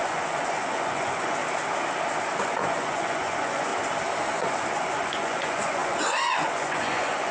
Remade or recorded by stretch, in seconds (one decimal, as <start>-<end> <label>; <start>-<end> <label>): 0.0-1.4 remade; 1.4-2.4 recorded; 2.4-3.7 remade; 3.7-4.2 recorded; 4.2-7.3 remade